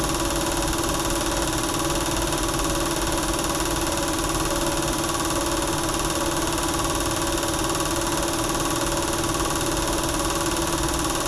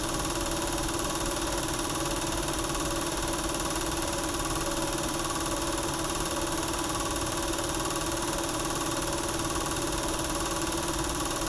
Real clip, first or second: first